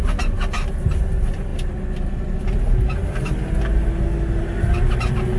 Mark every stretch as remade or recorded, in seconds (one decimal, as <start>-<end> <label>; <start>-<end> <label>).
0.0-5.4 recorded